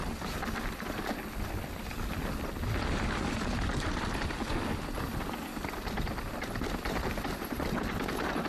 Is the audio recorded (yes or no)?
yes